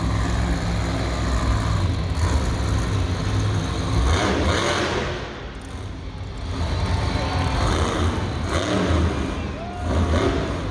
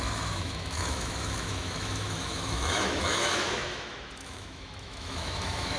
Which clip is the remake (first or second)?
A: second